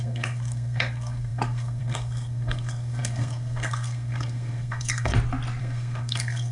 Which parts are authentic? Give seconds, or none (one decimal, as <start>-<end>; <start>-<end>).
5.1-5.6